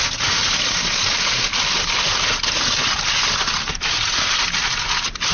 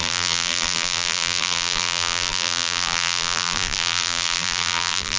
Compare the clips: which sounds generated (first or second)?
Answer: second